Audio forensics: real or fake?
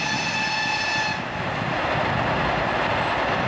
real